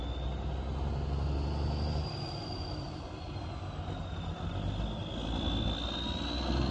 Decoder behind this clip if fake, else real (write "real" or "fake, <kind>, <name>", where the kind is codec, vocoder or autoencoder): real